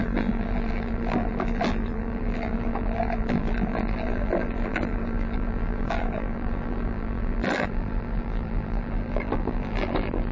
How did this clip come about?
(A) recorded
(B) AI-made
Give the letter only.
B